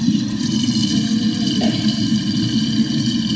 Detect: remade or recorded remade